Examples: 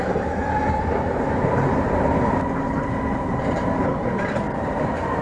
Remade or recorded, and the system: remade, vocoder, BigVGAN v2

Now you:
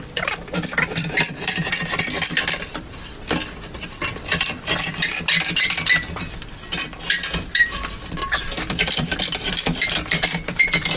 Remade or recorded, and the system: remade, vocoder, BigVGAN v2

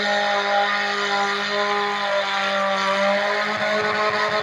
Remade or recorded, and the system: recorded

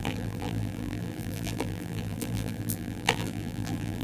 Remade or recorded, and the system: remade, vocoder, BigVGAN v2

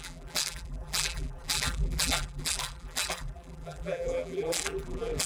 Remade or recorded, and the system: remade, vocoder, BigVGAN v2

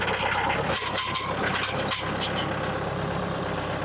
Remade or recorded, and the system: remade, vocoder, BigVGAN v2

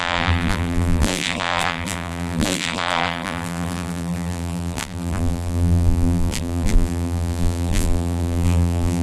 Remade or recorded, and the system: remade, vocoder, BigVGAN v2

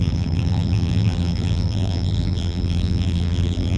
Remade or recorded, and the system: remade, vocoder, BigVGAN v2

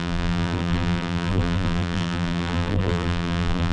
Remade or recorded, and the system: remade, vocoder, BigVGAN v2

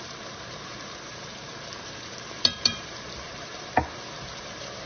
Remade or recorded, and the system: remade, vocoder, BigVGAN v2